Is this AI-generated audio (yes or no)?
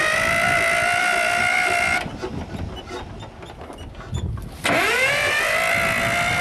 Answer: no